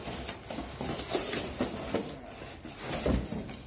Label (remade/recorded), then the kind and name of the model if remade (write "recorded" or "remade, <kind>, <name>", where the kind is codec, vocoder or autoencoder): recorded